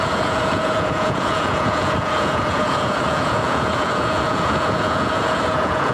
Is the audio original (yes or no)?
no